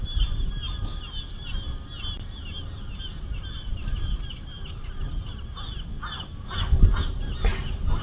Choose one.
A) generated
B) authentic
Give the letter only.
B